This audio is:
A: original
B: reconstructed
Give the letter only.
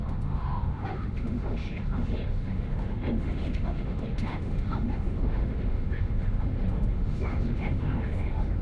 B